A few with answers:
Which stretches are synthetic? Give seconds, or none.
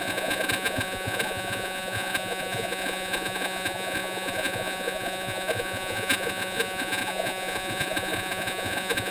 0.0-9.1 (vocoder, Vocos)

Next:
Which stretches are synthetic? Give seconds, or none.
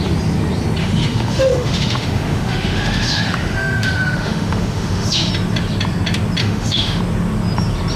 0.8-5.3 (autoencoder, DAC-VAE); 6.4-7.0